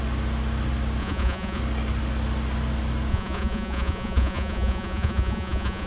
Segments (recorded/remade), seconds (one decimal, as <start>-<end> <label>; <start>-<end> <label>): 0.0-1.0 recorded; 1.0-1.6 remade; 1.6-3.1 recorded; 3.1-5.9 remade